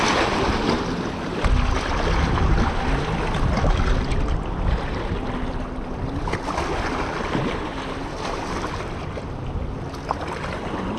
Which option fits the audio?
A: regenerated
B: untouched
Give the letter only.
B